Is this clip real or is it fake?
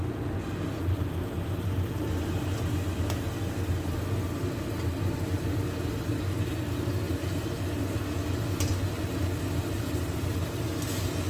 real